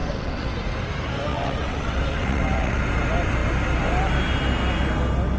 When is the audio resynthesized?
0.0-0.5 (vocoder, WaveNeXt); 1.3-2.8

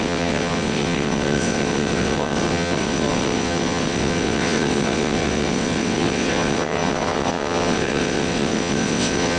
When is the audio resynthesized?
0.0-9.4 (vocoder, WaveNeXt)

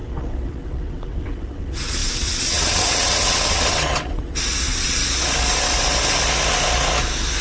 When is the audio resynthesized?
0.0-5.0 (vocoder, WaveNeXt)

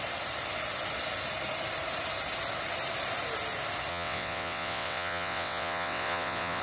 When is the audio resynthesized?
3.9-6.6 (vocoder, WaveNeXt)

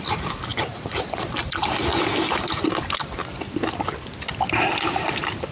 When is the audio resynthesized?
none